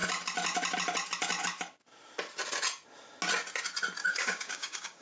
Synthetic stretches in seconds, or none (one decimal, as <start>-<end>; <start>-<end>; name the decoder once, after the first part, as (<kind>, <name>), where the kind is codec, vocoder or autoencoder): 4.0-5.0 (codec, DAC)